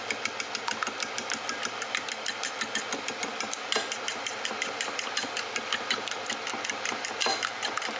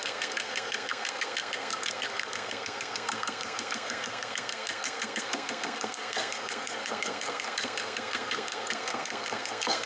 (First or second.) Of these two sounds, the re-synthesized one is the second